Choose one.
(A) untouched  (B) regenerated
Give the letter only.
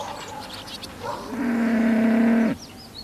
B